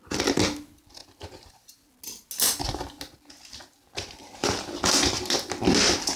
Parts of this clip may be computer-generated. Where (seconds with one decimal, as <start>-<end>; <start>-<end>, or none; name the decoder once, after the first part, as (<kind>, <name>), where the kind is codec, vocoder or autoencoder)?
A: none